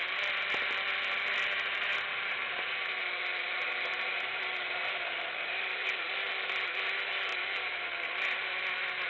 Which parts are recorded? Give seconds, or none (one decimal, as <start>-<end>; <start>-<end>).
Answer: 0.0-9.1